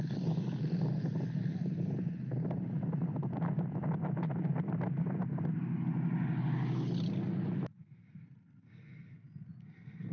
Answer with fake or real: real